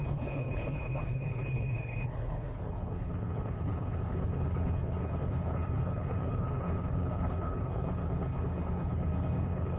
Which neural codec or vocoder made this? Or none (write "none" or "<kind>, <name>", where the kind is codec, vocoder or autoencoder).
codec, HILCodec